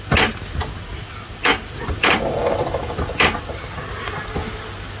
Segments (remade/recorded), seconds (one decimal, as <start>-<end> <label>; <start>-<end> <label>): 0.0-1.5 recorded; 1.5-2.4 remade; 2.4-5.0 recorded